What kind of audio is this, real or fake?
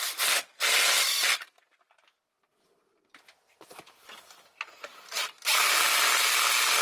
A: real